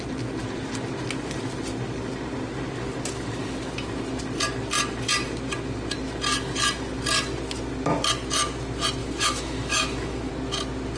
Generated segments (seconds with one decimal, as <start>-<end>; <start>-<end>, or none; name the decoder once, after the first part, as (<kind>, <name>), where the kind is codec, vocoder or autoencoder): 9.0-10.3 (autoencoder, DAC-VAE)